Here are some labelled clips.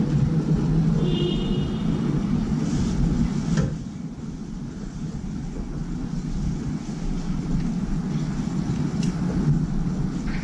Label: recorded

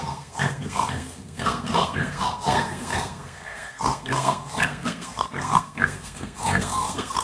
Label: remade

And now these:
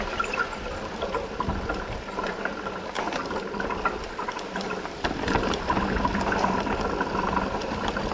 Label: recorded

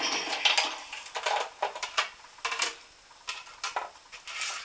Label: recorded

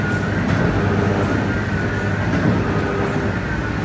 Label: recorded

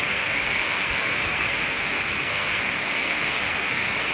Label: remade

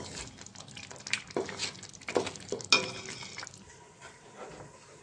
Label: recorded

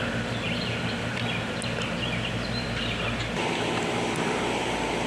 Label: recorded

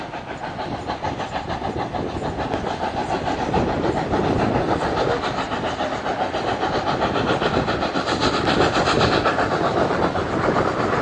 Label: recorded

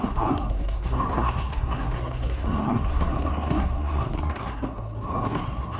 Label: remade